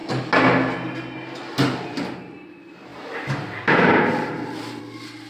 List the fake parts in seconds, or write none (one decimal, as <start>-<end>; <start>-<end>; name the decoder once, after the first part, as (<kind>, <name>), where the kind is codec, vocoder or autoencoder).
2.9-4.8 (vocoder, BigVGAN v2)